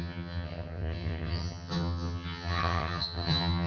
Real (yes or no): no